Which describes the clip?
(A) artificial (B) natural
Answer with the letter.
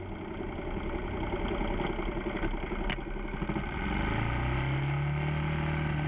B